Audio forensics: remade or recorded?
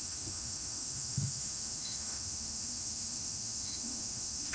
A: remade